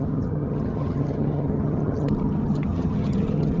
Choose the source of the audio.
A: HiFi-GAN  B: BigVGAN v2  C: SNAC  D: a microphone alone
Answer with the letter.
A